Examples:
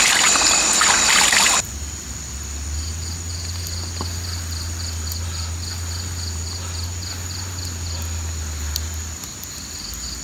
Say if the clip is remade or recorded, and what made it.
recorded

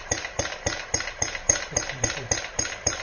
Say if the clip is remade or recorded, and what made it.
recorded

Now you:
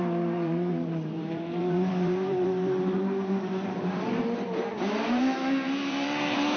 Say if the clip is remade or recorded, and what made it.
remade, vocoder, BigVGAN v2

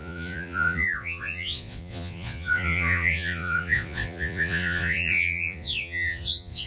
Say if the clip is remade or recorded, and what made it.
remade, vocoder, Vocos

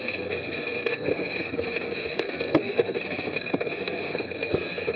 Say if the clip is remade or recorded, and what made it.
remade, codec, SNAC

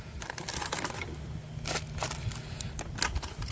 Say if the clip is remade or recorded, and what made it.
recorded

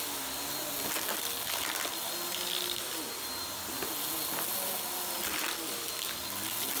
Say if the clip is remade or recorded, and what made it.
recorded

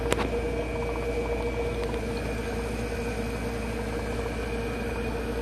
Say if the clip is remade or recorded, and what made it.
recorded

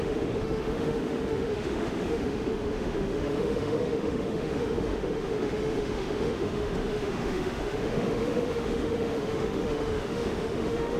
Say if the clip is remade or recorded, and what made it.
remade, autoencoder, DAC-VAE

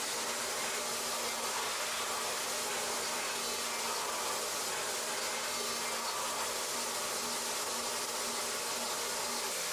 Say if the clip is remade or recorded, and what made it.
recorded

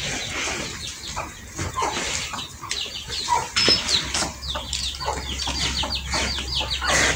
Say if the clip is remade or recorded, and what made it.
recorded